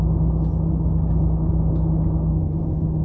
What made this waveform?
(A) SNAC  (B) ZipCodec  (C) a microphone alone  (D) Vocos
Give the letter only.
C